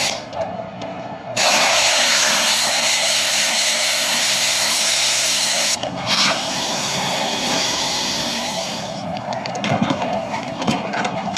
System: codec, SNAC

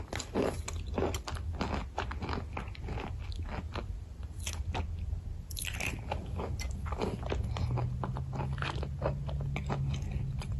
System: none